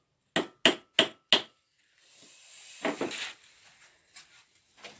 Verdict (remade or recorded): recorded